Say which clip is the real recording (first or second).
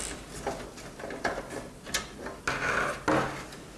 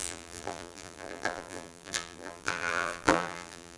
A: first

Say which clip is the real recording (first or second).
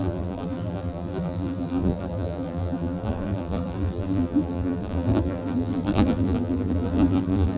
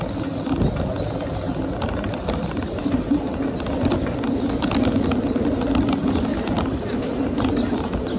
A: second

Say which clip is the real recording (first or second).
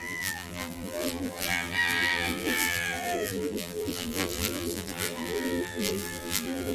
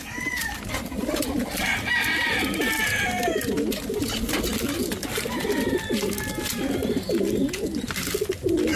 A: second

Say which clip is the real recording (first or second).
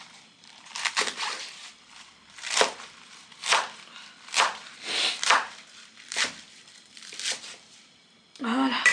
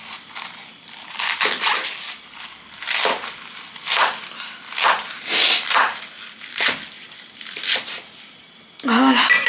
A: second